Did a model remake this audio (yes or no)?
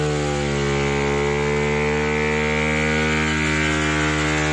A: no